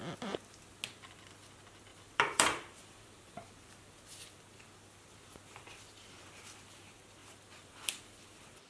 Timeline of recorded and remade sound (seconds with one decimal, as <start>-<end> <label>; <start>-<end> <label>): 0.0-1.9 recorded; 1.9-3.5 remade; 3.5-7.2 recorded; 7.2-8.7 remade